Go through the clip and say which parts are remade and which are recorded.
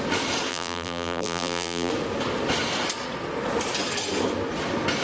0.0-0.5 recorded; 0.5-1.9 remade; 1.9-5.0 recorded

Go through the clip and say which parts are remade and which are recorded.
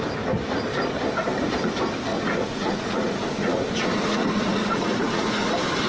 0.0-2.1 recorded; 2.1-5.5 remade; 5.5-5.9 recorded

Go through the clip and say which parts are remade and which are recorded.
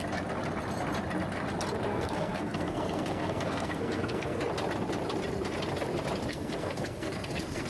0.0-1.9 recorded; 1.9-4.4 remade; 4.4-6.3 recorded; 6.3-7.7 remade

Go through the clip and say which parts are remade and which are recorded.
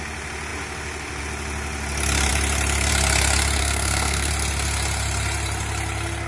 0.0-3.6 recorded; 3.6-4.3 remade; 4.3-6.3 recorded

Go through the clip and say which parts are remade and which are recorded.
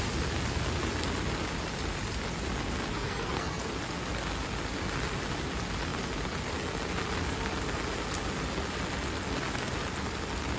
0.0-2.9 recorded; 2.9-3.6 remade; 3.6-10.6 recorded